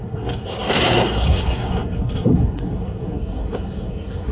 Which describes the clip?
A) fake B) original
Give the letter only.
A